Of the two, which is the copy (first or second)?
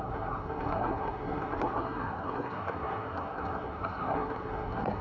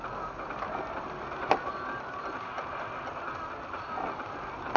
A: first